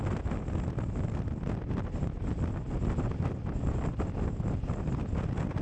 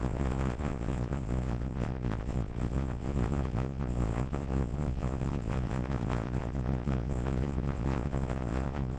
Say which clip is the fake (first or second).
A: second